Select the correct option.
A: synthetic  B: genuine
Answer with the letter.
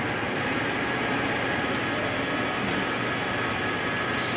B